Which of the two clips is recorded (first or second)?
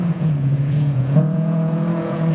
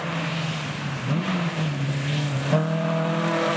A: second